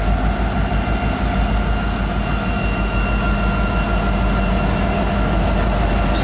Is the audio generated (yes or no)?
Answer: no